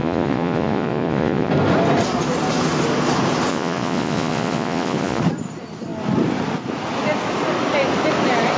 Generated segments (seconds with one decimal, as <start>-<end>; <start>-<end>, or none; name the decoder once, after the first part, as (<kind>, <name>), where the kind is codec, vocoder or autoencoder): 0.0-1.5 (vocoder, Vocos); 3.5-5.2